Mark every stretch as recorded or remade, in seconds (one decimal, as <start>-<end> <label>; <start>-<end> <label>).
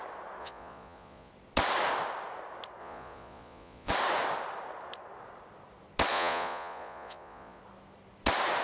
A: 0.0-0.4 recorded; 0.4-1.3 remade; 1.3-2.8 recorded; 2.8-3.9 remade; 3.9-6.1 recorded; 6.1-7.6 remade; 7.6-8.6 recorded